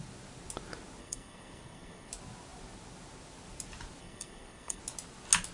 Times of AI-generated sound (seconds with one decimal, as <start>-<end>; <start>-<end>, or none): 1.0-2.1; 4.0-4.8